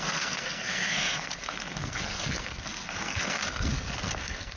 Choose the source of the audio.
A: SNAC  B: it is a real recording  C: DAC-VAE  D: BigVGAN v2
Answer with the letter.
A